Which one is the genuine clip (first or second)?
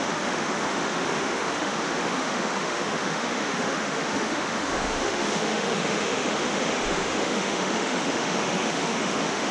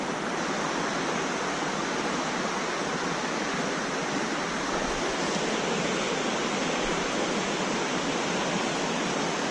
second